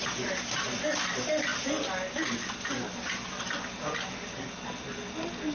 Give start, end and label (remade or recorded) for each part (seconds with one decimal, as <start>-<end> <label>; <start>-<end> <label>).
0.0-1.5 recorded; 1.5-2.7 remade; 2.7-5.5 recorded